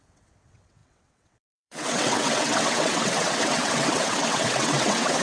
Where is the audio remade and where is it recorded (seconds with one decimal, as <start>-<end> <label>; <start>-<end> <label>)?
0.0-5.2 remade

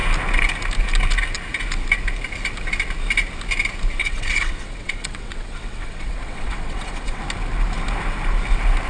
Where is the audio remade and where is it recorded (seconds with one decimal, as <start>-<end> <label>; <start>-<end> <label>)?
0.0-4.0 recorded; 4.0-7.2 remade; 7.2-8.9 recorded

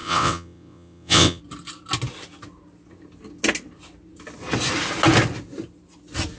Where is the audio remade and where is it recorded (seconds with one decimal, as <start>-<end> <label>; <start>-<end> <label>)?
0.0-1.4 remade; 1.4-6.4 recorded

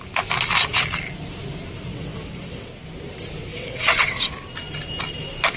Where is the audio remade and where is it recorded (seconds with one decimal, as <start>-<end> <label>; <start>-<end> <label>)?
0.0-1.9 recorded; 1.9-2.7 remade; 2.7-3.5 recorded; 3.5-4.3 remade; 4.3-5.6 recorded

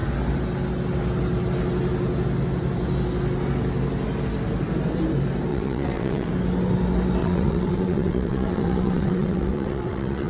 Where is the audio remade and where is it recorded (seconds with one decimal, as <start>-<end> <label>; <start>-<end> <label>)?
0.0-5.5 recorded; 5.5-6.3 remade; 6.3-7.2 recorded; 7.2-10.3 remade

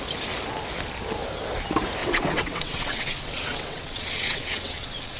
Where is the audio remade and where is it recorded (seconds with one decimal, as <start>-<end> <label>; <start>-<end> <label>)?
0.0-2.0 recorded; 2.0-5.2 remade